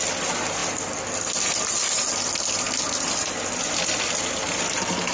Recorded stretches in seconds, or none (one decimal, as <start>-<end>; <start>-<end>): 0.0-5.1